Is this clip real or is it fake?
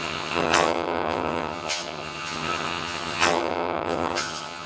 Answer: fake